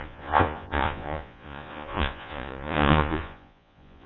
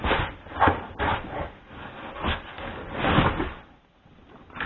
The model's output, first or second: first